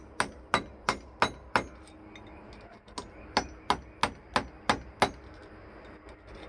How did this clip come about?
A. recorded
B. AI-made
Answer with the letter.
A